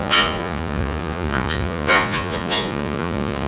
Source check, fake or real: fake